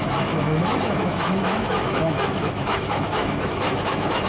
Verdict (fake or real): fake